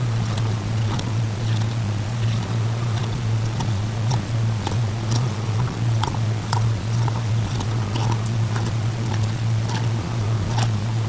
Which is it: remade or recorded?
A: remade